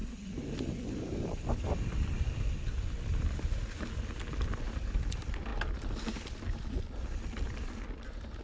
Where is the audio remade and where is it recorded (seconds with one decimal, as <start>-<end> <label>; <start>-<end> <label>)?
0.0-8.4 recorded

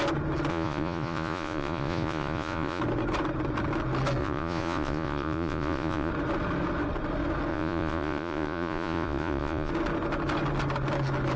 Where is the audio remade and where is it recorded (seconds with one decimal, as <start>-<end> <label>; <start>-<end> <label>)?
0.0-0.5 recorded; 0.5-2.8 remade; 2.8-4.2 recorded; 4.2-6.1 remade; 6.1-7.5 recorded; 7.5-9.7 remade; 9.7-11.4 recorded

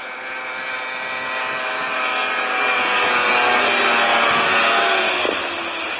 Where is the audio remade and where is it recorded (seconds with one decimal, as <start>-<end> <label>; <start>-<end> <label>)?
0.0-6.0 recorded

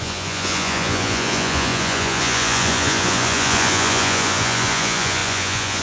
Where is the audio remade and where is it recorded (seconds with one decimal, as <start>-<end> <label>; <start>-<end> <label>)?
0.0-5.8 remade

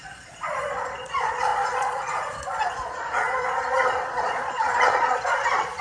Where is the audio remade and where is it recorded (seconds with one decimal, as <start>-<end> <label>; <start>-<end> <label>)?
0.0-5.8 remade

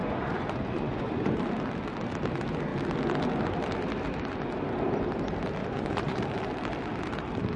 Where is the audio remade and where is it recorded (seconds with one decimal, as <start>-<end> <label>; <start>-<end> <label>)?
0.0-1.4 remade; 1.4-5.6 recorded; 5.6-6.2 remade; 6.2-7.6 recorded

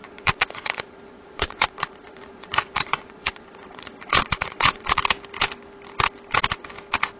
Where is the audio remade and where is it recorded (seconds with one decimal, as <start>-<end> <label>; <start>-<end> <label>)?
0.0-5.0 remade; 5.0-7.2 recorded